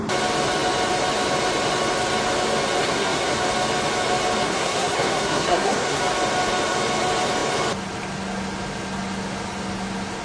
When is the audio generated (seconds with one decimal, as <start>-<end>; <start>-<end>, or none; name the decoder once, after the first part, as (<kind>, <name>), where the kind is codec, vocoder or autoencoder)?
2.8-3.3 (codec, SNAC); 4.4-6.0